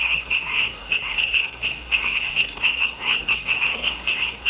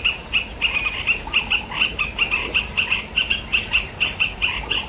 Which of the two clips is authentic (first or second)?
second